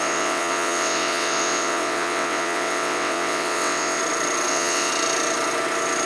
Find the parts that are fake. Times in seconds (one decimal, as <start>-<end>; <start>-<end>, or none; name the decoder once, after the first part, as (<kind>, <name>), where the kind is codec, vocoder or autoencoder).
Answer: 0.0-4.0 (vocoder, WaveNeXt); 4.5-4.9